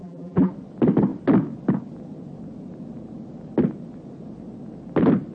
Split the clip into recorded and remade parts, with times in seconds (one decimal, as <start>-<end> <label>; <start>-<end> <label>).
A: 0.0-0.5 remade; 0.5-5.3 recorded